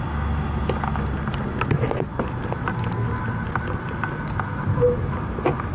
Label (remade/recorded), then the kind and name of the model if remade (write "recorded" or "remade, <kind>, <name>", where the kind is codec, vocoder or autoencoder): recorded